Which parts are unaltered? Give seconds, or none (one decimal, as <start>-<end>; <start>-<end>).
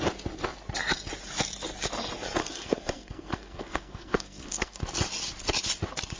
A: 0.0-2.4; 4.8-6.2